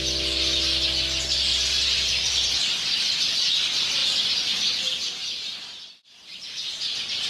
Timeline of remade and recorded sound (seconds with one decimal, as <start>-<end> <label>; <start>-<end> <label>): 0.0-1.5 recorded; 1.5-3.2 remade; 3.2-4.0 recorded; 4.0-5.0 remade; 5.0-7.3 recorded